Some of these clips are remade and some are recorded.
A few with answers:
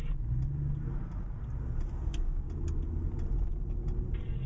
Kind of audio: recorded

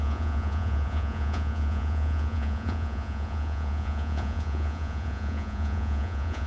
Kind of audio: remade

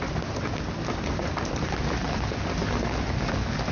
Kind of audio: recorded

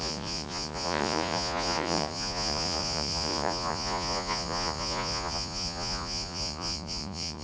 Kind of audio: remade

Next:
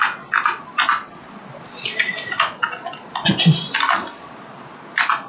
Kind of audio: recorded